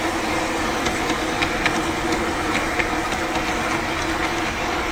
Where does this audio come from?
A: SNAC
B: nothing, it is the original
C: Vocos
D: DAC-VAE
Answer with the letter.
B